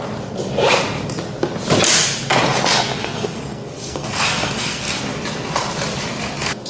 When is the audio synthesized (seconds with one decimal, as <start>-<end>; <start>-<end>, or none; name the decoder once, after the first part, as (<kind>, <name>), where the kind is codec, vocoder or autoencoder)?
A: 3.0-5.0 (codec, SNAC)